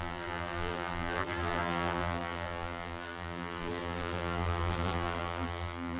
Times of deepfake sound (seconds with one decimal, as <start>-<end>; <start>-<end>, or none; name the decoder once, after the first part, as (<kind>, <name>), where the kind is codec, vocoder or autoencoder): 0.0-6.0 (vocoder, BigVGAN v2)